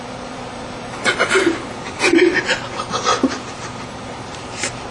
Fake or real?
fake